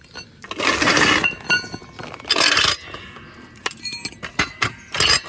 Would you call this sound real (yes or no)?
yes